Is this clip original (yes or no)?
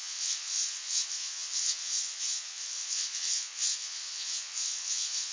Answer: no